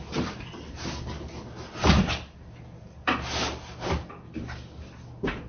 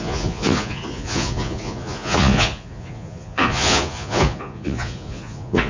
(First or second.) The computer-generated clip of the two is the second